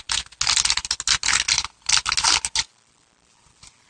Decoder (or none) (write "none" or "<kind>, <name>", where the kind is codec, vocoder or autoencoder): none